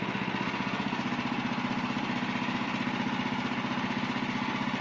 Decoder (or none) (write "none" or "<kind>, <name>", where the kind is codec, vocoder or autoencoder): none